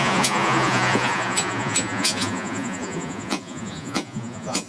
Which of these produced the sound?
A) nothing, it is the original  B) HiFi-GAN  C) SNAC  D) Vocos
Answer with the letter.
D